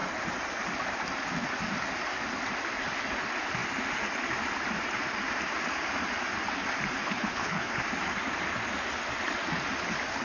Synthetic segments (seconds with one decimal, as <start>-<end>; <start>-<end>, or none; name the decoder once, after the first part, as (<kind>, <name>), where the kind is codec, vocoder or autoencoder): 7.0-7.8 (codec, HILCodec)